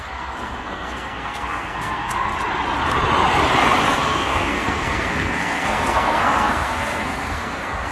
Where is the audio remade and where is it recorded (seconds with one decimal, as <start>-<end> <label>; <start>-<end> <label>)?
0.0-2.3 remade; 2.3-3.9 recorded; 3.9-7.9 remade